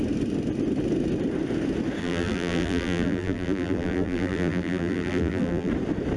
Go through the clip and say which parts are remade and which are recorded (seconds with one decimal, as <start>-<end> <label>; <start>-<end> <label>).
0.0-2.0 recorded; 2.0-5.7 remade; 5.7-6.2 recorded